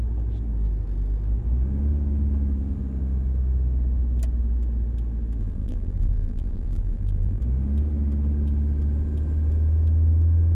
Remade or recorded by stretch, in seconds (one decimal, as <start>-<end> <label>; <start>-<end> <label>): 0.0-5.4 recorded; 5.4-7.4 remade; 7.4-10.5 recorded